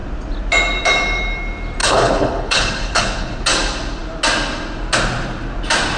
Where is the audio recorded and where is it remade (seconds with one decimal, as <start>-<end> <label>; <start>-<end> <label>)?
0.0-1.8 recorded; 1.8-3.4 remade; 3.4-6.0 recorded

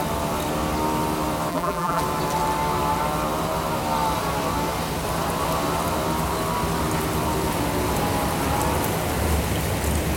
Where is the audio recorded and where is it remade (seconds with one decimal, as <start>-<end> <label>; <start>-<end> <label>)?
0.0-1.5 recorded; 1.5-2.0 remade; 2.0-10.2 recorded

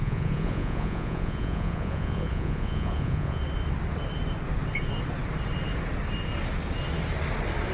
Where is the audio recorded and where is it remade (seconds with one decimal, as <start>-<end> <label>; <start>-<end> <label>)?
0.0-3.4 remade; 3.4-7.7 recorded

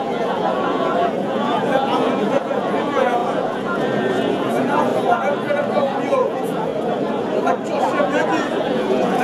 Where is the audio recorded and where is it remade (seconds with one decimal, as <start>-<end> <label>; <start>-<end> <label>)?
0.0-4.9 remade; 4.9-6.0 recorded; 6.0-6.7 remade; 6.7-7.9 recorded; 7.9-9.2 remade

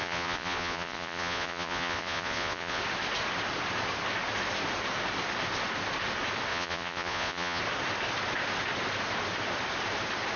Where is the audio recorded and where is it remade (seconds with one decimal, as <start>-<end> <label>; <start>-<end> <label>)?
0.0-2.8 remade; 2.8-6.5 recorded; 6.5-7.6 remade; 7.6-10.4 recorded

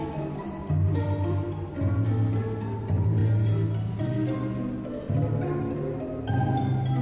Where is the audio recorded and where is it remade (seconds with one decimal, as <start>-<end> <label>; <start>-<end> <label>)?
0.0-7.0 recorded